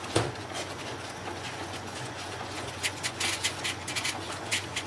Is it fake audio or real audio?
fake